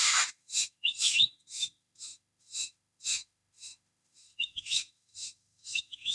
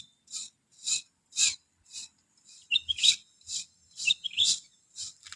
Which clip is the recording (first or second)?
second